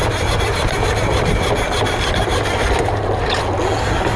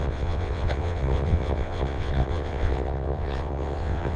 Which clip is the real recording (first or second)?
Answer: first